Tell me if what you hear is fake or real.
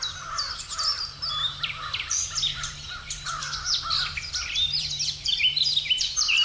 fake